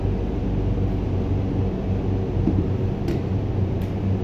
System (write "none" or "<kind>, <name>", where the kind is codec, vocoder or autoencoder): none